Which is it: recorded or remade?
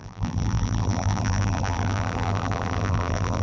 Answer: remade